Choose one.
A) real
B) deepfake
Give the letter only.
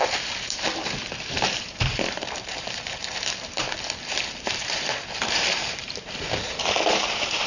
B